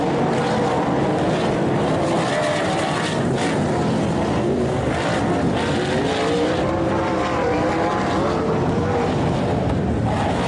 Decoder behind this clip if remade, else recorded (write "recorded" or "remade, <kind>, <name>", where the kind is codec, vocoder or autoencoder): recorded